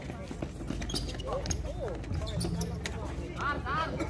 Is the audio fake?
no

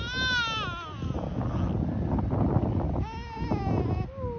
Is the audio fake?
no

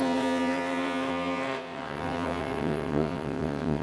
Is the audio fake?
yes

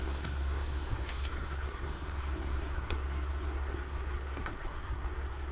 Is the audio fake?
yes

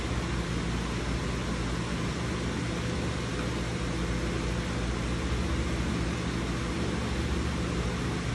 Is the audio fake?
no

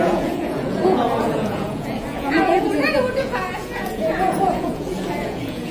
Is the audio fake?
yes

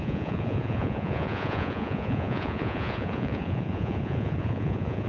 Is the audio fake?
yes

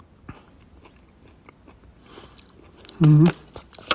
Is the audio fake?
no